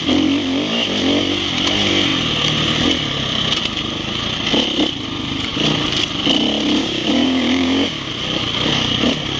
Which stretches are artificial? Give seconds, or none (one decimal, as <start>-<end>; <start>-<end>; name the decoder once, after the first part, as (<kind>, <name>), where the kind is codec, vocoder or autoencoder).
6.8-8.1 (codec, DAC)